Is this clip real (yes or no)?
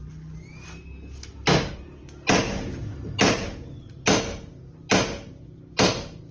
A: yes